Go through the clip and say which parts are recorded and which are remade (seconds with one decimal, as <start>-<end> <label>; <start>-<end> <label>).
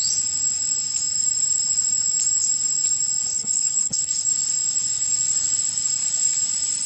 0.0-3.3 recorded; 3.3-4.3 remade; 4.3-6.9 recorded